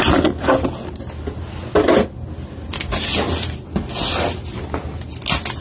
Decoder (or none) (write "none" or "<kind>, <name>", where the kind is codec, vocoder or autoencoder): none